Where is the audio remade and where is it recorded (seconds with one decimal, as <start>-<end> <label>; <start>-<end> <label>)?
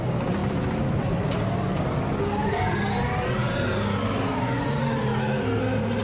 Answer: 0.0-6.0 recorded